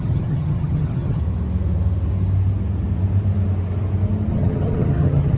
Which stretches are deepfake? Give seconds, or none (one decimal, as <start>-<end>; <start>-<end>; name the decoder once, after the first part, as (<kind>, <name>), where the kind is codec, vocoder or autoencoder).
0.0-1.2 (vocoder, HiFi-GAN); 4.3-5.4